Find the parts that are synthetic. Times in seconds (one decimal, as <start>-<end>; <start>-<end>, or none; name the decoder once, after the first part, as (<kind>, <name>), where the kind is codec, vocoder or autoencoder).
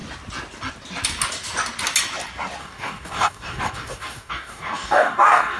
2.6-5.6 (codec, DAC)